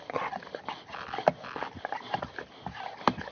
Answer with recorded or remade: recorded